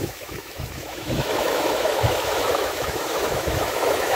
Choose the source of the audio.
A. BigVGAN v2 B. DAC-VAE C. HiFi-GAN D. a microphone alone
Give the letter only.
B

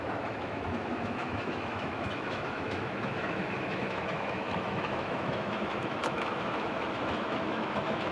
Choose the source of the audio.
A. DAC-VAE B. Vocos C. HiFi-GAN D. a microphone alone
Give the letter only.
A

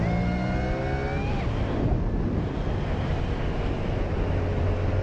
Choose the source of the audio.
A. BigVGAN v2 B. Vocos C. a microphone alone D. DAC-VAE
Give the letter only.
C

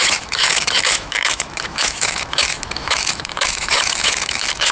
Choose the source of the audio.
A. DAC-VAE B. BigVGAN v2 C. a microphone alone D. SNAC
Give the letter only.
A